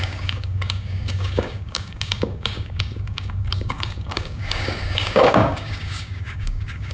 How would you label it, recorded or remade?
remade